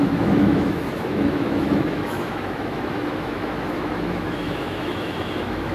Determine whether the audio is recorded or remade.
remade